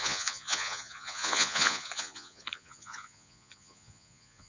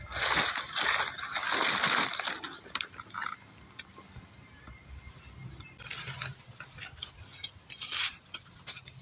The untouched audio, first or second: second